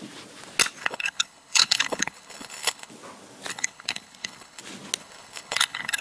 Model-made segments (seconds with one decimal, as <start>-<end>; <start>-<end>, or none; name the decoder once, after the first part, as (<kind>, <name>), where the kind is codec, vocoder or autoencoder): 0.8-2.9 (codec, HILCodec); 3.5-4.6; 5.0-6.0